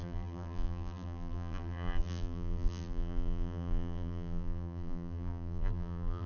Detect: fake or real fake